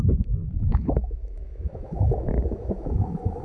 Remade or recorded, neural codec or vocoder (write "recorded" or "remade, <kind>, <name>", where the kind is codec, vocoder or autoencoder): remade, autoencoder, DAC-VAE